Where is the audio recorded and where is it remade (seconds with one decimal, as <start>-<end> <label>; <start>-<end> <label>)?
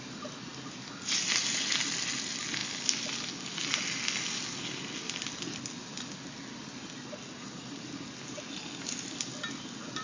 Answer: 0.0-10.0 recorded